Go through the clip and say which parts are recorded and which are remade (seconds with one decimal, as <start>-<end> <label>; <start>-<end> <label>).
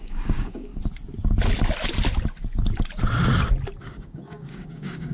0.0-0.7 remade; 0.7-3.8 recorded; 3.8-5.1 remade